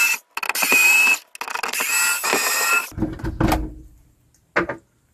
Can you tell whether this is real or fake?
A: real